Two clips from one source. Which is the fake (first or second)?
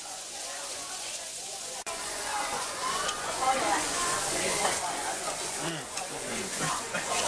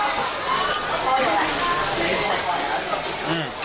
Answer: first